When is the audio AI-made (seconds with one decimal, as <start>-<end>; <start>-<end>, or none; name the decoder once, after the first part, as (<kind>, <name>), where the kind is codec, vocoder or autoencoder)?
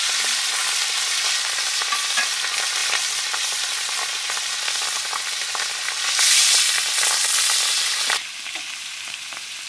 none